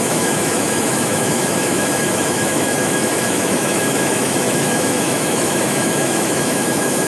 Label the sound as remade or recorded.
remade